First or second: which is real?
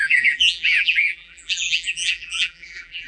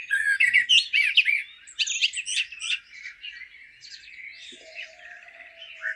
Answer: second